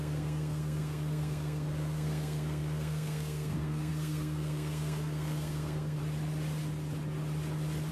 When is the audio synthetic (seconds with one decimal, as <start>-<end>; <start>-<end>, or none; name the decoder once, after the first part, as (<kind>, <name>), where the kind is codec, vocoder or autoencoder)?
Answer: 0.0-6.0 (codec, SNAC)